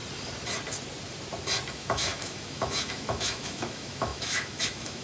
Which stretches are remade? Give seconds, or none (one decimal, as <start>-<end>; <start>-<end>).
1.7-5.0